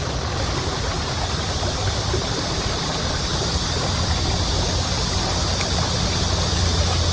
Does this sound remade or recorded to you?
recorded